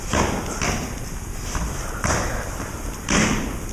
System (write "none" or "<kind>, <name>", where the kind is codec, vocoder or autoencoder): none